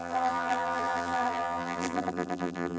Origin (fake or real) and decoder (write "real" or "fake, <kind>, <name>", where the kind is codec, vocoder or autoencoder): fake, vocoder, BigVGAN v2